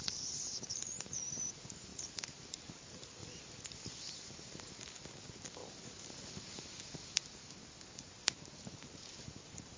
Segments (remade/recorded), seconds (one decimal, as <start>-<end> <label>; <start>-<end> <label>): 0.0-3.2 remade; 3.2-3.7 recorded; 3.7-9.8 remade